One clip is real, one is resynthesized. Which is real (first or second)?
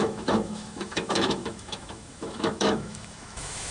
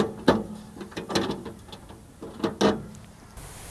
second